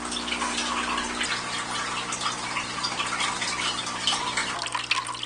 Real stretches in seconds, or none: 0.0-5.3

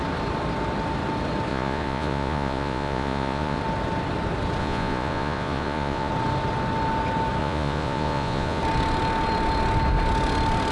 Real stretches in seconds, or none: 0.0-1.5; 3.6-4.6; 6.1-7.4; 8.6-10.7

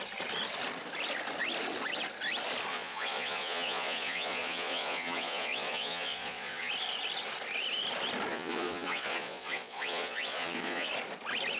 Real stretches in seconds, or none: 0.0-2.7; 6.7-8.3; 10.9-11.6

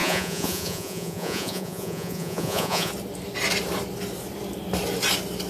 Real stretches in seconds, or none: 2.9-5.5